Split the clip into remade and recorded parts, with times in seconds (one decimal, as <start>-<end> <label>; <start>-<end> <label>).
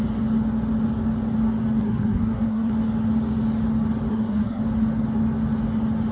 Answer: 0.0-1.8 recorded; 1.8-2.7 remade; 2.7-4.1 recorded; 4.1-4.6 remade; 4.6-6.1 recorded